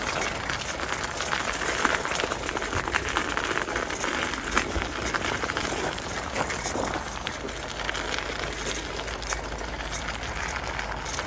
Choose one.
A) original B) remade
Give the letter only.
A